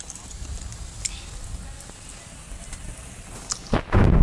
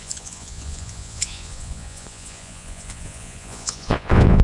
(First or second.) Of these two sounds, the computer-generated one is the second